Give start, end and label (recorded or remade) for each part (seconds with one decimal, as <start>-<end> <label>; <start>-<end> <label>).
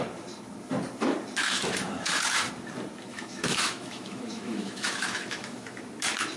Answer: 0.0-1.4 recorded; 1.4-2.5 remade; 2.5-3.1 recorded; 3.1-5.8 remade; 5.8-6.4 recorded